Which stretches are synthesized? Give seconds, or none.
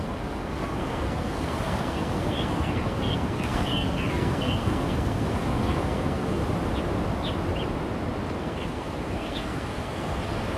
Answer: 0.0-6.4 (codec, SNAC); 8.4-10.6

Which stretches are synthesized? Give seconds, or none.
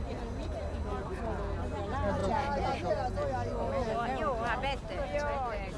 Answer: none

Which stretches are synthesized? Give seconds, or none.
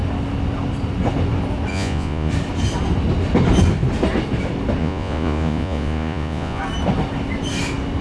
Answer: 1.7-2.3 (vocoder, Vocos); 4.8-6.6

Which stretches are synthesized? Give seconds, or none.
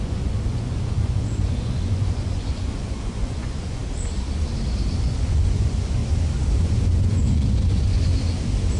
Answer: 0.0-3.8 (vocoder, Vocos); 4.9-6.0; 6.6-8.1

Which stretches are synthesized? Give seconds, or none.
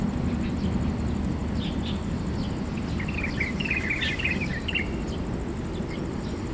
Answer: none